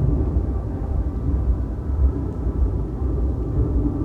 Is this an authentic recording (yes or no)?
no